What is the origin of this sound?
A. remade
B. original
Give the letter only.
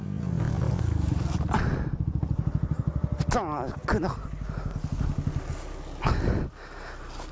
B